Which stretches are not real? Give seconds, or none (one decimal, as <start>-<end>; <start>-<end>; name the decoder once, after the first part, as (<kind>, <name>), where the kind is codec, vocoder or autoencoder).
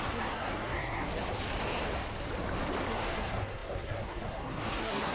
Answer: 0.0-1.1 (codec, SNAC); 2.8-5.1